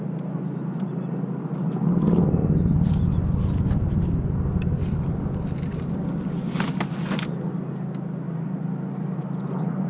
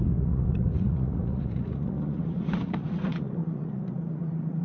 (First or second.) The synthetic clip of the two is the second